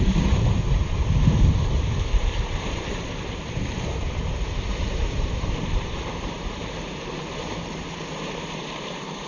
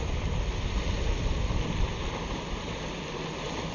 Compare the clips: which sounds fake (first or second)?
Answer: first